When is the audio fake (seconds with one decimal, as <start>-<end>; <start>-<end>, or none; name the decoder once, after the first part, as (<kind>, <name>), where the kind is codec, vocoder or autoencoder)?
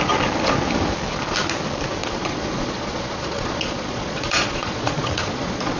2.0-5.8 (vocoder, Vocos)